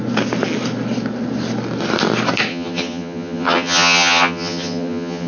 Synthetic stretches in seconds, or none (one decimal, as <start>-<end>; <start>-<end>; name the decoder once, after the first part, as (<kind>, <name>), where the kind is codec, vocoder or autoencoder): 2.5-5.3 (vocoder, HiFi-GAN)